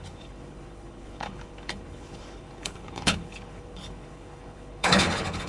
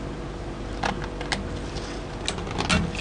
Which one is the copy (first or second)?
first